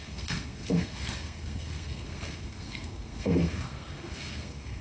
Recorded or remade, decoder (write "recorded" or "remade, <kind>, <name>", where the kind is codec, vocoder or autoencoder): remade, codec, SNAC